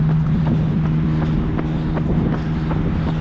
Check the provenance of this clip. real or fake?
real